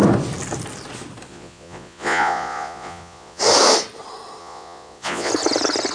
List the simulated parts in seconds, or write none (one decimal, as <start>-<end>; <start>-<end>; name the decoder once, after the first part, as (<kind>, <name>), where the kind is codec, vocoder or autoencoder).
1.3-3.4 (vocoder, Vocos); 4.4-5.3